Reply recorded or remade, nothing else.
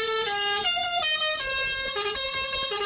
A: recorded